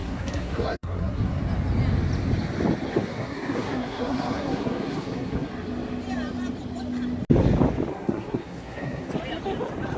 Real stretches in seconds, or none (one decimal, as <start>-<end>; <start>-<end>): 1.4-2.9; 5.5-7.9; 9.1-10.0